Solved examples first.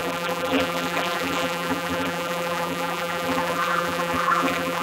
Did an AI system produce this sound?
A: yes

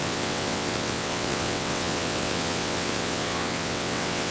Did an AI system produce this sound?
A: yes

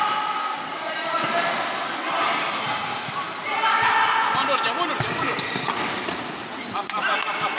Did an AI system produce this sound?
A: no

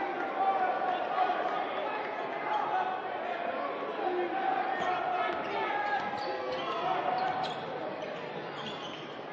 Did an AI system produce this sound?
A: no